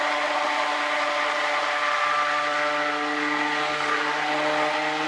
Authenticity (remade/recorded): recorded